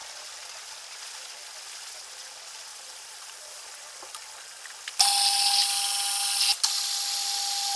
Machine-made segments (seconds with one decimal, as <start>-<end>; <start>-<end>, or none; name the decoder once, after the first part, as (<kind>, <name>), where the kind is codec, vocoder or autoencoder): 2.7-3.6 (vocoder, BigVGAN v2)